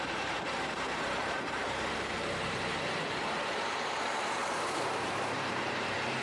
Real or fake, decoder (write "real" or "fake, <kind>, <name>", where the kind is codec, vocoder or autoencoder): fake, vocoder, BigVGAN v2